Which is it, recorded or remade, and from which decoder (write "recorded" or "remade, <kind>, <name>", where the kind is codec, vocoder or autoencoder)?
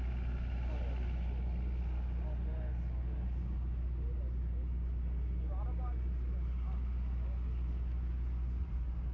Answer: recorded